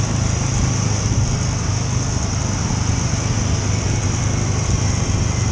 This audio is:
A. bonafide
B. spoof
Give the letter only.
A